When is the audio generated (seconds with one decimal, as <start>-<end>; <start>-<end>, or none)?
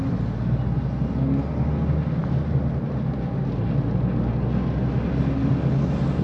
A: none